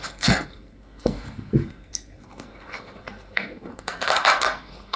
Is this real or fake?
fake